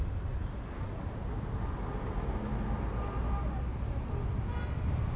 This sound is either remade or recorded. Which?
recorded